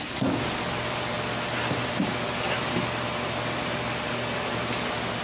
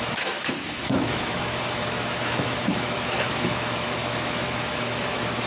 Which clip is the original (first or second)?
first